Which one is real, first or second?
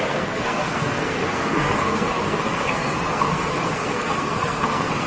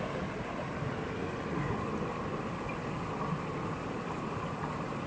second